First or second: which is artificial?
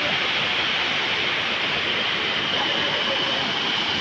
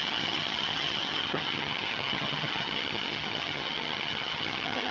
second